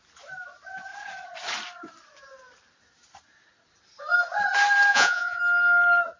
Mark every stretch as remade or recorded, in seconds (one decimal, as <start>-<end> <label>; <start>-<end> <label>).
0.0-4.9 recorded; 4.9-5.4 remade; 5.4-6.2 recorded